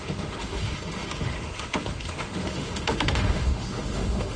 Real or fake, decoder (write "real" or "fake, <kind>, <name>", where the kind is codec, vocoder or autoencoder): fake, autoencoder, DAC-VAE